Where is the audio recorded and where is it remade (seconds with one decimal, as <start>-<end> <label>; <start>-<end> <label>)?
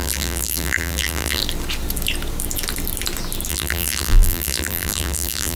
0.0-1.4 remade; 1.4-3.5 recorded; 3.5-5.6 remade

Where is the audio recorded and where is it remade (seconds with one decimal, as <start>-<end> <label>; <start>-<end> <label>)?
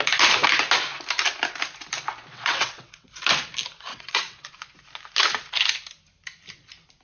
0.0-2.3 recorded; 2.3-3.1 remade; 3.1-3.9 recorded; 3.9-4.5 remade; 4.5-7.0 recorded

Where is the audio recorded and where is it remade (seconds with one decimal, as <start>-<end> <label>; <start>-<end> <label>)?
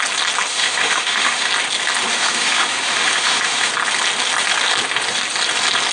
0.0-0.5 recorded; 0.5-1.5 remade; 1.5-2.1 recorded; 2.1-3.7 remade; 3.7-5.9 recorded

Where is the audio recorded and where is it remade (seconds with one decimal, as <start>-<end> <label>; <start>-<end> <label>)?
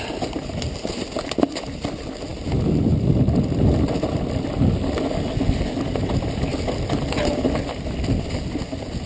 0.0-9.1 recorded